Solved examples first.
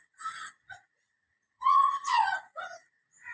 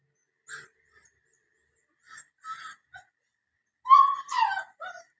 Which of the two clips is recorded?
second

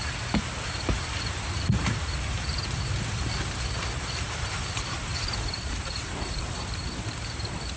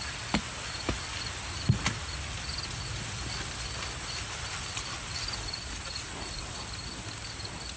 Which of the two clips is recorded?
second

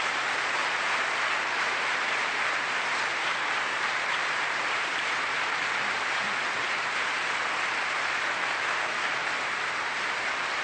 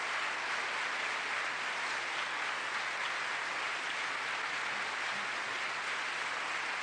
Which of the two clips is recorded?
second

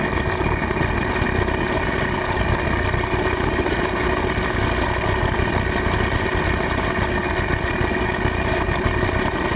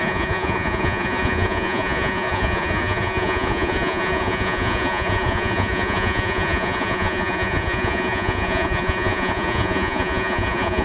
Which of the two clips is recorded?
first